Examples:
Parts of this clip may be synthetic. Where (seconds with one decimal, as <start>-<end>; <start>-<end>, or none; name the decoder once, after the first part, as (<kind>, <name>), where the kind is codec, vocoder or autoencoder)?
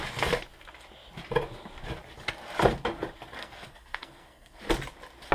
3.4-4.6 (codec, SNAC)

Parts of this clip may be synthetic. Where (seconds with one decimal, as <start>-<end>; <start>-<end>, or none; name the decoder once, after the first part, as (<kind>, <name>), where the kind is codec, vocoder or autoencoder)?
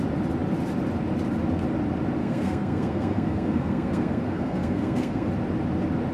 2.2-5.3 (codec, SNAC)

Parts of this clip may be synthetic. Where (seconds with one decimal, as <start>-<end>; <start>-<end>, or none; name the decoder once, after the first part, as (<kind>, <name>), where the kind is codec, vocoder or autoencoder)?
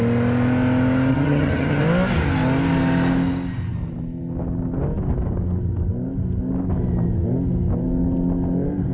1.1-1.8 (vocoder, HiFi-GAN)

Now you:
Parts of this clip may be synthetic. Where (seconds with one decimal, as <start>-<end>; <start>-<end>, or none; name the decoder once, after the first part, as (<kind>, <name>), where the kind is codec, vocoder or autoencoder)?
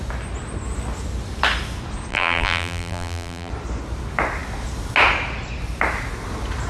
2.1-3.5 (vocoder, BigVGAN v2)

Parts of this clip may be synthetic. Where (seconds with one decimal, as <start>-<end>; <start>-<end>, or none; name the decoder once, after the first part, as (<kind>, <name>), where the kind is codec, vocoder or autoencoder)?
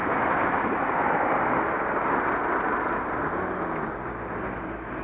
none